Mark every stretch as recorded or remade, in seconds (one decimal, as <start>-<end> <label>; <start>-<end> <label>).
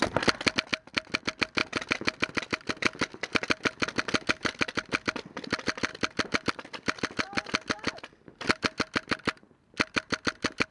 0.0-5.9 recorded; 5.9-6.5 remade; 6.5-10.7 recorded